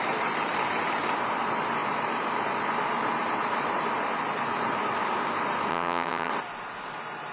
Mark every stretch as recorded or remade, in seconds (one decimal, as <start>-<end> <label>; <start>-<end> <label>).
0.0-5.7 recorded; 5.7-6.3 remade; 6.3-7.3 recorded